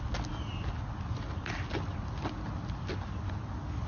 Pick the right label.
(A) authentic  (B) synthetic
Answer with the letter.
A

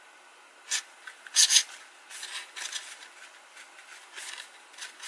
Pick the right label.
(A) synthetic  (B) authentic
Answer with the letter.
B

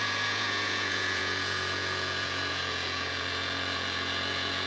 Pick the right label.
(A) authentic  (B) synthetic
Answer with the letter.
B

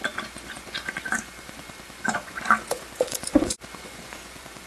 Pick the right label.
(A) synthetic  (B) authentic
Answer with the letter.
A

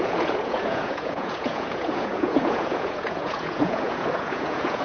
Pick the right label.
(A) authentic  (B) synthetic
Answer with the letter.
B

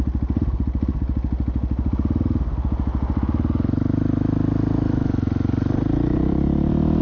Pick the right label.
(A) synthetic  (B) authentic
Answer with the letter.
B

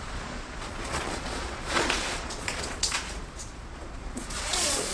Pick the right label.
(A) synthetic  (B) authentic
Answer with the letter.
A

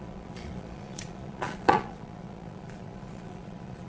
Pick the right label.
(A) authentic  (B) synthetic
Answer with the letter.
B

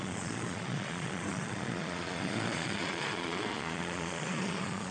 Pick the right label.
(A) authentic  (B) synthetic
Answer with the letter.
B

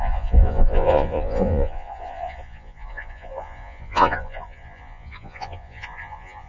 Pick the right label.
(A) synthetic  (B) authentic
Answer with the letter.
A